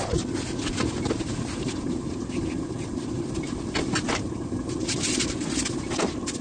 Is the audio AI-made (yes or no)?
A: no